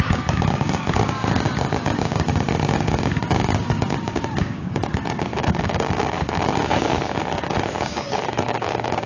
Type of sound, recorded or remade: remade